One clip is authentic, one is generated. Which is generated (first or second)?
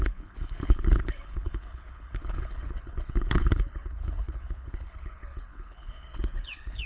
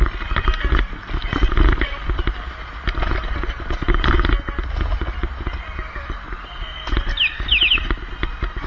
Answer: first